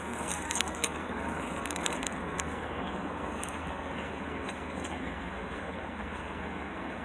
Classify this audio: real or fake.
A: fake